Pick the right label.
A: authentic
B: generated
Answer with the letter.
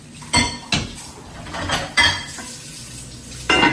A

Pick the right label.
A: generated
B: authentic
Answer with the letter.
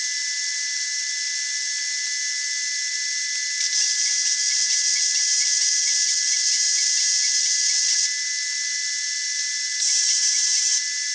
B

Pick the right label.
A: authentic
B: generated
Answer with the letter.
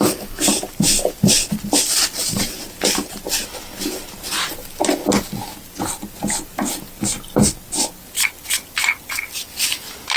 A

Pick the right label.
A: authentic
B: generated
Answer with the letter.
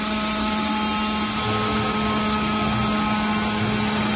A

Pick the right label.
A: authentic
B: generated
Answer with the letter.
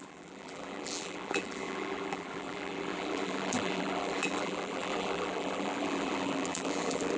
B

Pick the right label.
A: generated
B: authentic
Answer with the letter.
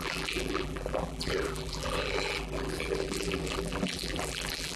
A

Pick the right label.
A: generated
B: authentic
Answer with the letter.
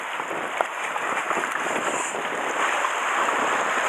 A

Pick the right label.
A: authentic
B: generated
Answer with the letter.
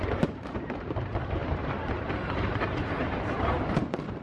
B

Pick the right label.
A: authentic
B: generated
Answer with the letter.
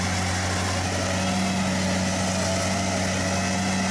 A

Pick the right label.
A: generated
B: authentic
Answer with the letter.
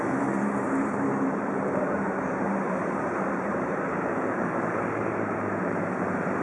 A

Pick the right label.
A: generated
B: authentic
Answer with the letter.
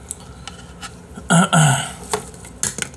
B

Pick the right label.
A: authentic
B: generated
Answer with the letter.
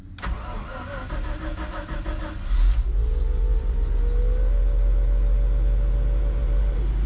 A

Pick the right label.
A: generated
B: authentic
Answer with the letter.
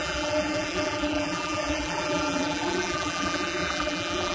A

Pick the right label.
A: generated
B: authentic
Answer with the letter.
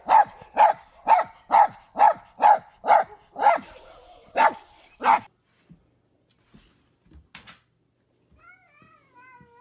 B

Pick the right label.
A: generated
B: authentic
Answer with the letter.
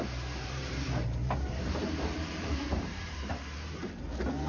A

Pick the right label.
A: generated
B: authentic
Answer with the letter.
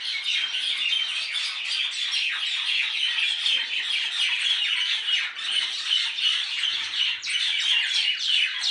B